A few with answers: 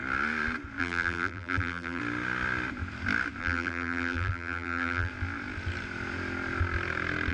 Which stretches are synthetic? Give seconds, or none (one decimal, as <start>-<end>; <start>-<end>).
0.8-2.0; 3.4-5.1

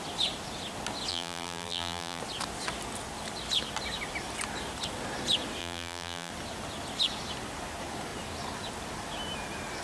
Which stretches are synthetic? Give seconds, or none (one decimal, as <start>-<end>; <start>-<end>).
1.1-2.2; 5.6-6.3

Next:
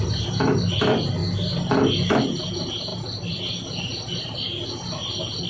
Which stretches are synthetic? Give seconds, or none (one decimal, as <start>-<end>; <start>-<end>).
0.0-1.2; 2.5-5.5